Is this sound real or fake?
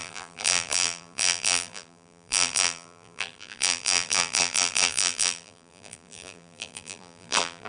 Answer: fake